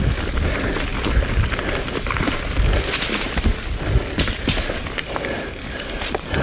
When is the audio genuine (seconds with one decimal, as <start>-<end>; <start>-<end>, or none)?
0.0-6.4